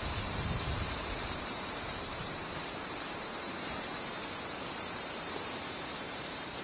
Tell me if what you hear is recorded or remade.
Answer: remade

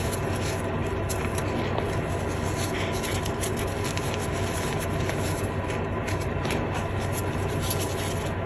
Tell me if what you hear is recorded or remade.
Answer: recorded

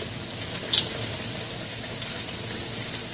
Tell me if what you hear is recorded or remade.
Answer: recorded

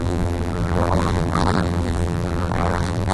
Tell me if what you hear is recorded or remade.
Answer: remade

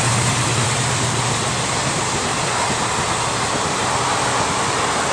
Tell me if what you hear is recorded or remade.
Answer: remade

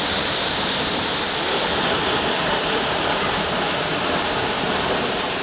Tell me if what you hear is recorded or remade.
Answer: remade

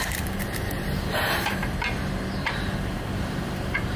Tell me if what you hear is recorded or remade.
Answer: remade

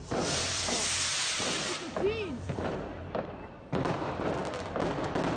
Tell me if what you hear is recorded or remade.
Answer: remade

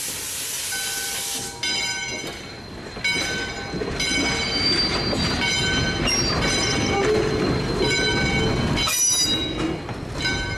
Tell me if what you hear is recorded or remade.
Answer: recorded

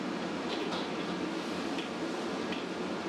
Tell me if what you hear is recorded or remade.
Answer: recorded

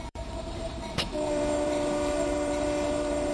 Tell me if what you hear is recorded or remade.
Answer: remade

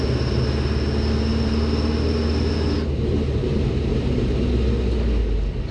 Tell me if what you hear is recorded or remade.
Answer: recorded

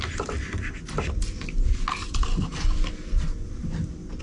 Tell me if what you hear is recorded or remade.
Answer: recorded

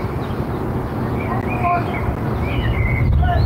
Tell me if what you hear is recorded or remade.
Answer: recorded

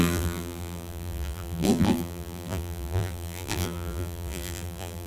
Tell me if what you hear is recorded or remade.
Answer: remade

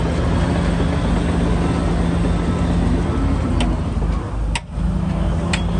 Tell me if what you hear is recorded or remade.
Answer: recorded